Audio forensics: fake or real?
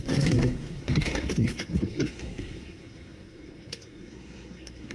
fake